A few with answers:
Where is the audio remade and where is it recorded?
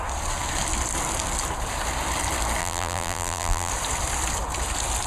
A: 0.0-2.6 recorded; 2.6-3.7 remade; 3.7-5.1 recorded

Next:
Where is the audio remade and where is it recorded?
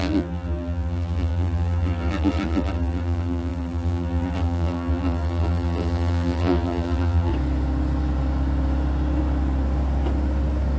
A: 0.0-7.3 remade; 7.3-10.8 recorded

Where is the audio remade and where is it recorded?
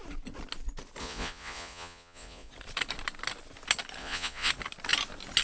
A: 0.0-1.0 recorded; 1.0-2.5 remade; 2.5-4.0 recorded; 4.0-4.5 remade; 4.5-5.4 recorded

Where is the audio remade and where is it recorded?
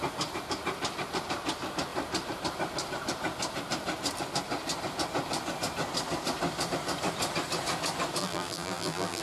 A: 0.0-8.2 recorded; 8.2-9.2 remade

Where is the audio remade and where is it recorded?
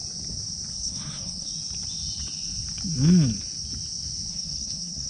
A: 0.0-0.7 recorded; 0.7-1.5 remade; 1.5-4.3 recorded; 4.3-5.1 remade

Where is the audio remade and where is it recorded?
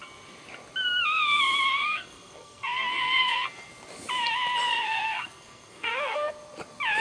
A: 0.0-1.8 recorded; 1.8-3.7 remade; 3.7-4.7 recorded; 4.7-6.3 remade; 6.3-7.0 recorded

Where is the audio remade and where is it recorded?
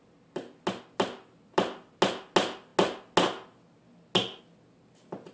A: 0.0-5.3 recorded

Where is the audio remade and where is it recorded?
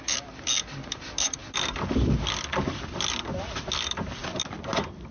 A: 0.0-5.1 recorded